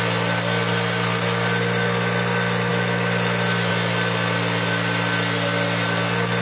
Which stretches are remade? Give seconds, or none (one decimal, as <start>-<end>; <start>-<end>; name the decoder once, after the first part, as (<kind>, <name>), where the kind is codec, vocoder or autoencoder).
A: none